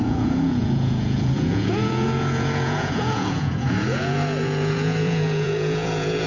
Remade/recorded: remade